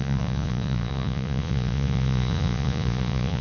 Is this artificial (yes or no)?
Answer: yes